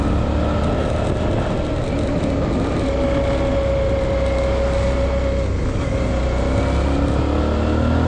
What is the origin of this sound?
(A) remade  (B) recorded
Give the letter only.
B